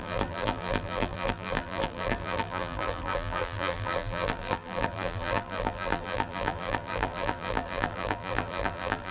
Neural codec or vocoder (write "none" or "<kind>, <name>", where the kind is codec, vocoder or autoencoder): vocoder, BigVGAN v2